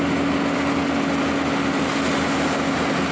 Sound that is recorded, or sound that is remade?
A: recorded